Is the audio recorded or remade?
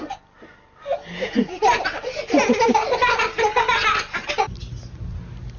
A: recorded